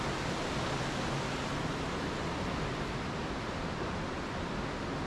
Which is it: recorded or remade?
recorded